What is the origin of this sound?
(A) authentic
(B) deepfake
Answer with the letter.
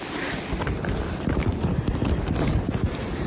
A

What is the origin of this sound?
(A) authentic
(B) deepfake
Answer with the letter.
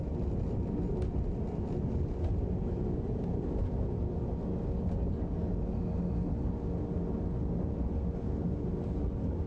A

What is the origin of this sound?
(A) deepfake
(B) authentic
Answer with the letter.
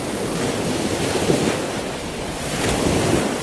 B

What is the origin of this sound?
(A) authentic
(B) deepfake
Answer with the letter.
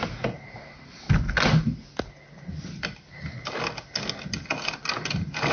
A